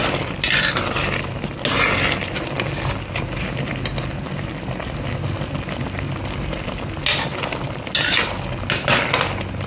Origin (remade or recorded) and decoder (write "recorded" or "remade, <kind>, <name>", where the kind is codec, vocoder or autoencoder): recorded